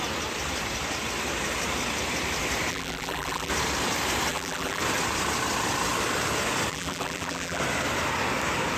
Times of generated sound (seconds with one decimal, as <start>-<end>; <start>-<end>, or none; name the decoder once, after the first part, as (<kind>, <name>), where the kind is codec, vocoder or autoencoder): 2.7-3.5 (vocoder, BigVGAN v2); 4.3-4.8; 6.7-7.6